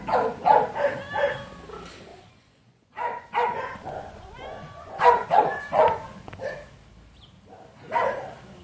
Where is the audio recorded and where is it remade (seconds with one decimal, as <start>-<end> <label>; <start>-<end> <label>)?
0.0-2.1 recorded; 2.1-6.3 remade; 6.3-8.6 recorded